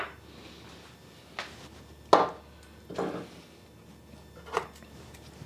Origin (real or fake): real